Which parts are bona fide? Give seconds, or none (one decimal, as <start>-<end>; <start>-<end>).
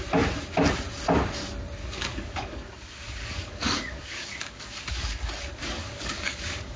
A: 0.0-1.8; 5.3-5.8